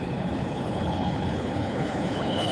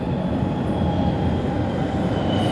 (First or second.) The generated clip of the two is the first